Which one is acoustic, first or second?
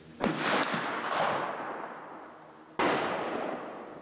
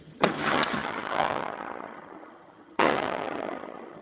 first